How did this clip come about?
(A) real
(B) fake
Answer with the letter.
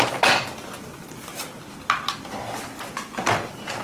A